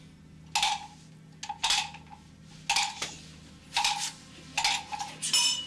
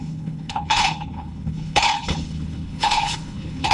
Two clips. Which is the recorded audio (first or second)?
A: first